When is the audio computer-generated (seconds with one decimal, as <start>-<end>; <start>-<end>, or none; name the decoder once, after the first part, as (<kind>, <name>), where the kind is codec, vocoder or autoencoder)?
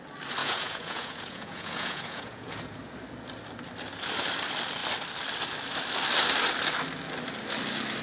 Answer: 0.4-2.8 (vocoder, Vocos)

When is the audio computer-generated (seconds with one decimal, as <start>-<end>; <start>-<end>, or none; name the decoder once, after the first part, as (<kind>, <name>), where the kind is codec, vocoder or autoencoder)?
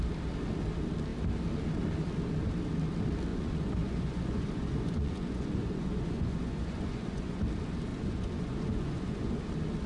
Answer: 3.3-7.4 (vocoder, Vocos); 7.9-9.4